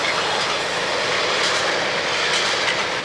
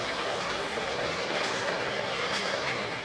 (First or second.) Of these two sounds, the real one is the first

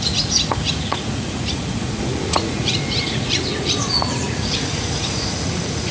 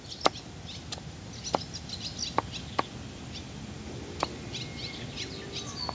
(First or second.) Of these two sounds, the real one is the second